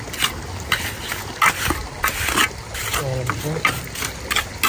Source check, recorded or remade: recorded